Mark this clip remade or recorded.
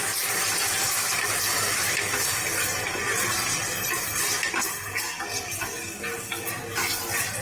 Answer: recorded